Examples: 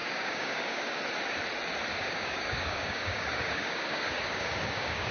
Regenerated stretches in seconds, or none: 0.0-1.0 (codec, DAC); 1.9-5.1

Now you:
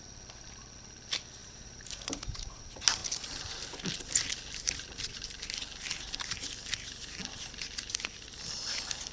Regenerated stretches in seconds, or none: 1.4-2.6 (vocoder, BigVGAN v2)

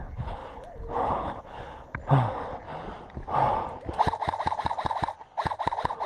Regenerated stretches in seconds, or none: 0.0-2.0 (codec, HILCodec)

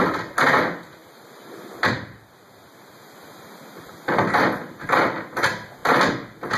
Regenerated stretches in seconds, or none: none

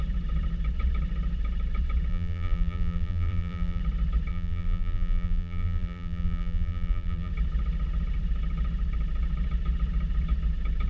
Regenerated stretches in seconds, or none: 2.1-3.8 (vocoder, BigVGAN v2); 4.3-7.3

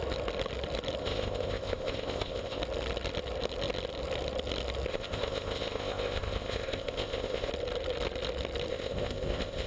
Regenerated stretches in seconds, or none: 1.0-2.6 (codec, ZipCodec); 4.9-7.5; 8.7-9.7

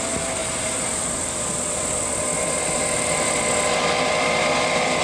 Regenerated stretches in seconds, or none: 0.4-3.4 (vocoder, BigVGAN v2)